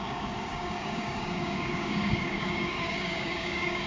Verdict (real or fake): fake